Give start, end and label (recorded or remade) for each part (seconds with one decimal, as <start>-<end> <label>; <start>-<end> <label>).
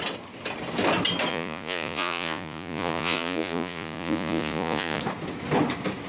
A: 0.0-1.3 recorded; 1.3-5.0 remade; 5.0-6.1 recorded